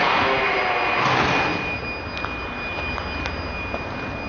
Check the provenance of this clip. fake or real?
real